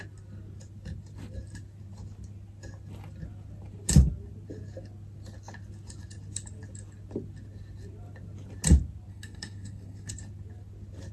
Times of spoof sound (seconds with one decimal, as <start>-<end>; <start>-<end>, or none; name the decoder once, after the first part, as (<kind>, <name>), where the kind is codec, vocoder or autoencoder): 9.1-10.1 (codec, SNAC)